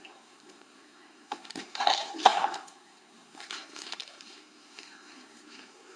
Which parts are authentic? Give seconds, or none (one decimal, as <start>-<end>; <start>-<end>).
none